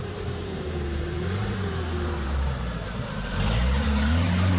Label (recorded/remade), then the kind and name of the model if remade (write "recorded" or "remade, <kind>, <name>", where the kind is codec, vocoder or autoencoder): remade, vocoder, BigVGAN v2